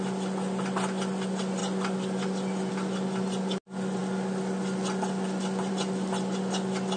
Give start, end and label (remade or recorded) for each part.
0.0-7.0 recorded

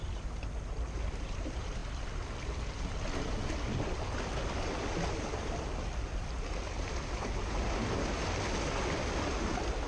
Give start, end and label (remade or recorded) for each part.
0.0-9.9 recorded

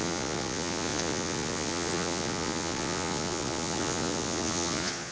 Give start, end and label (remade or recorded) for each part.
0.0-5.1 remade

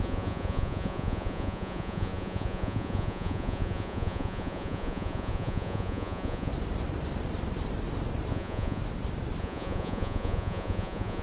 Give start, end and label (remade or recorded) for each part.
0.0-6.5 remade; 6.5-8.3 recorded; 8.3-8.8 remade; 8.8-9.4 recorded; 9.4-11.2 remade

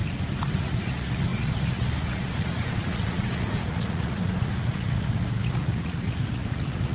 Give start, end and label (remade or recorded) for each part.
0.0-0.6 recorded; 0.6-6.9 remade

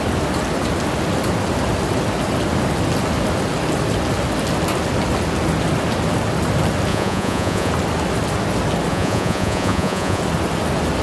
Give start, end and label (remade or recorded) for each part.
0.0-6.9 recorded; 6.9-7.7 remade; 7.7-8.9 recorded; 8.9-10.2 remade; 10.2-11.0 recorded